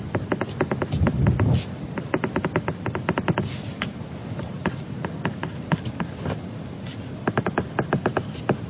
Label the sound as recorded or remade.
recorded